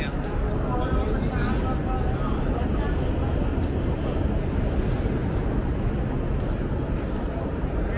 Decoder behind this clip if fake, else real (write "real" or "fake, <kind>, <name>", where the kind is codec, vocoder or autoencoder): real